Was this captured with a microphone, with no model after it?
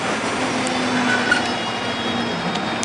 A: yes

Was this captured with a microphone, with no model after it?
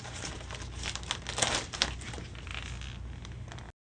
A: yes